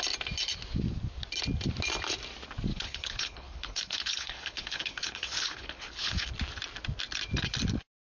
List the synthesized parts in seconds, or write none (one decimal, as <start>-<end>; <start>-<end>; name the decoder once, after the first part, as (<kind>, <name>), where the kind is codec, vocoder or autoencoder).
2.7-6.3 (codec, HILCodec)